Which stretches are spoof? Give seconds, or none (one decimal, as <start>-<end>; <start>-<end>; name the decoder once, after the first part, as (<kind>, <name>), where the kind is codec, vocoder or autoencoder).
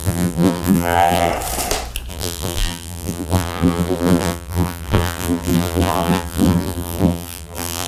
0.0-1.3 (vocoder, BigVGAN v2); 2.1-7.9